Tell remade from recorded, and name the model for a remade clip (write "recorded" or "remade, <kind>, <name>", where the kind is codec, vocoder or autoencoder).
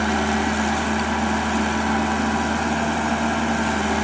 recorded